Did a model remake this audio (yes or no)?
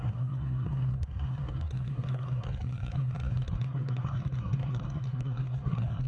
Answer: yes